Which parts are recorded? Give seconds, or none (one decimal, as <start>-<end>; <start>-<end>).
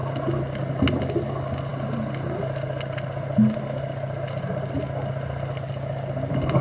0.0-6.6